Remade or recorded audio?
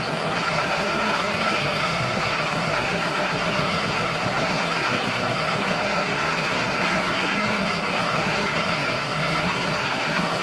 remade